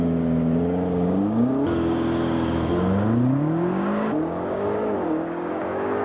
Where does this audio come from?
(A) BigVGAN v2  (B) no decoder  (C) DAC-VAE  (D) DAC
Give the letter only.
D